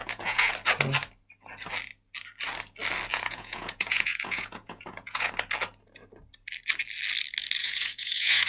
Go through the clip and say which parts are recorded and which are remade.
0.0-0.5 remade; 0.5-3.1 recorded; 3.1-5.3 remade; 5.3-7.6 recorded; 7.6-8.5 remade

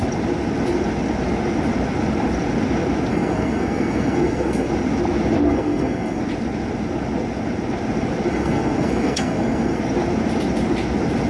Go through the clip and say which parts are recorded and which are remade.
0.0-3.1 recorded; 3.1-4.7 remade; 4.7-5.5 recorded; 5.5-6.2 remade; 6.2-8.3 recorded; 8.3-9.8 remade; 9.8-11.3 recorded

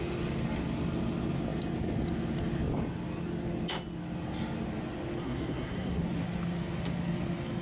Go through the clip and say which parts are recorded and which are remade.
0.0-5.2 recorded; 5.2-6.0 remade; 6.0-7.6 recorded